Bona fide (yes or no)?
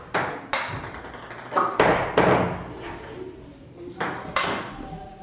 yes